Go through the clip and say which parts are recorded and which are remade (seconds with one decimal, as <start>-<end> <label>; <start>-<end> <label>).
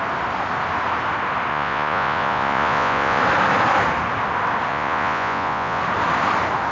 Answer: 0.0-1.5 recorded; 1.5-3.2 remade; 3.2-4.7 recorded; 4.7-5.8 remade; 5.8-6.7 recorded